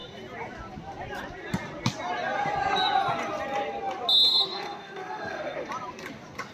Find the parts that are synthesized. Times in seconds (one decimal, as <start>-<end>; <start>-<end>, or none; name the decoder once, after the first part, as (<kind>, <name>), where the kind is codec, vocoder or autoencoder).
4.3-5.7 (codec, SNAC)